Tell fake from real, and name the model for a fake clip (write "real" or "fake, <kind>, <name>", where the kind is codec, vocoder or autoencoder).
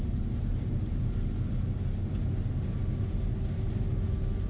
real